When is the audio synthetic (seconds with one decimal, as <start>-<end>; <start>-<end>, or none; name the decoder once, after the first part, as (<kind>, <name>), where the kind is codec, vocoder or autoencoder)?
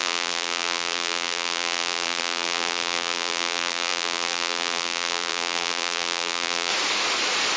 0.0-6.7 (vocoder, BigVGAN v2)